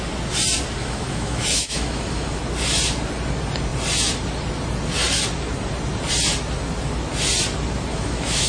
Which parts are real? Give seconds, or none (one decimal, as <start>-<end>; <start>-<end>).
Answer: 0.0-0.8; 2.4-7.9